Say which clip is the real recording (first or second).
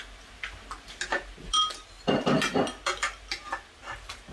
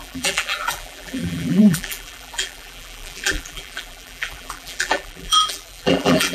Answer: first